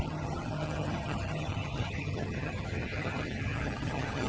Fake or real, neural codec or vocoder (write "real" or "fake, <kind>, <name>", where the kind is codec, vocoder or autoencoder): fake, vocoder, HiFi-GAN